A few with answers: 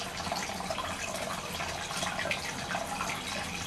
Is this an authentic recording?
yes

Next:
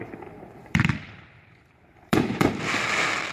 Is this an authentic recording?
no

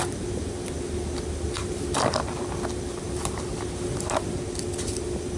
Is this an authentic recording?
yes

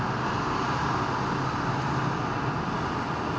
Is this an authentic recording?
yes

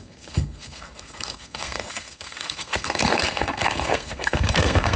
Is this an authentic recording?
no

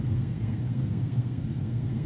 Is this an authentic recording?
no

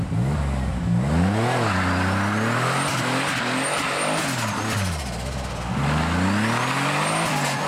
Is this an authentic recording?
yes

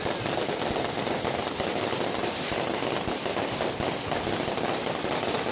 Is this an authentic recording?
yes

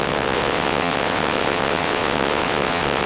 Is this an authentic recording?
no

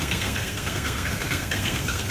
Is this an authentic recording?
no